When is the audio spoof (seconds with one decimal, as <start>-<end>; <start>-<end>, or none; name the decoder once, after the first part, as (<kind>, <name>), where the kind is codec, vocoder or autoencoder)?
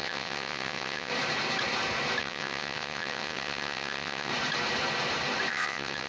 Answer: 0.0-1.1 (vocoder, WaveNeXt); 2.2-4.3; 5.5-6.1